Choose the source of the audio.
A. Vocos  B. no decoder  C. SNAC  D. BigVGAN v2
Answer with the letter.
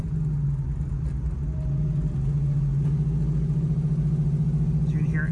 B